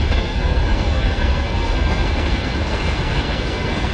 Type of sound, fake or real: fake